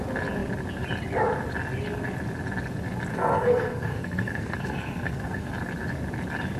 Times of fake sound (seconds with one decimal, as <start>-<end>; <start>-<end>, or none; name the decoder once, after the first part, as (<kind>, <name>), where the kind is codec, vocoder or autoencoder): 3.1-5.5 (codec, SNAC)